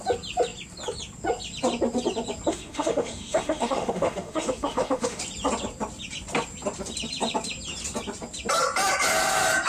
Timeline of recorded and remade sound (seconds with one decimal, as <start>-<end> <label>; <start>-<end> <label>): 0.0-2.5 recorded; 2.5-5.2 remade; 5.2-9.7 recorded